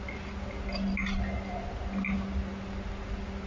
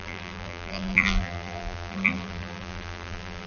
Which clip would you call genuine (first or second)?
first